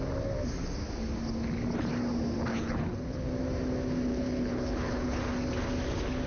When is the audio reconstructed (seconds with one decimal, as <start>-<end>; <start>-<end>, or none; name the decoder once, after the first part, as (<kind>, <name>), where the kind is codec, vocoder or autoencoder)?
2.5-3.3 (codec, HILCodec); 4.1-5.2